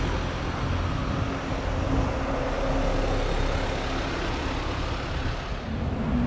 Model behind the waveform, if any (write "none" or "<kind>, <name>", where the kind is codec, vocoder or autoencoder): none